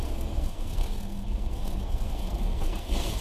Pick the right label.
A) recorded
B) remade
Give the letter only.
B